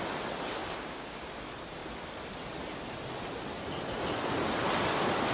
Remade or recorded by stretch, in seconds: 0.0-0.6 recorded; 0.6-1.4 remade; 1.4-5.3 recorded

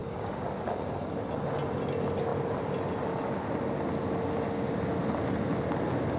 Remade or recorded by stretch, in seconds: 0.0-0.6 remade; 0.6-6.2 recorded

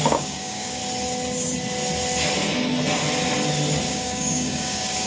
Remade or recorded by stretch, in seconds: 0.0-0.8 remade; 0.8-3.9 recorded; 3.9-5.1 remade

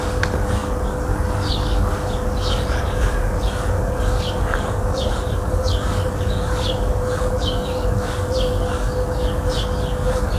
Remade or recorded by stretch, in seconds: 0.0-10.4 remade

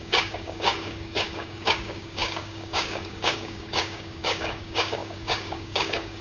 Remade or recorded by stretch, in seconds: 0.0-6.2 remade

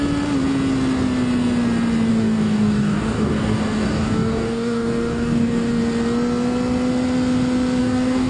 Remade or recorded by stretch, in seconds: 0.0-2.1 recorded; 2.1-5.8 remade; 5.8-7.8 recorded; 7.8-8.3 remade